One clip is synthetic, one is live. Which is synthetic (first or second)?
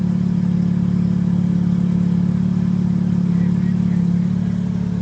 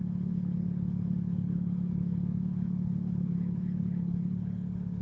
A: second